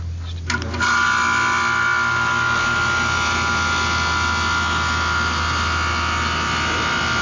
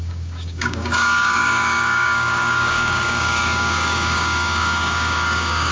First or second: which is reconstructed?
second